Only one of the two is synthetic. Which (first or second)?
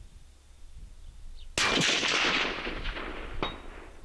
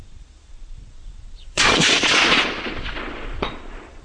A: second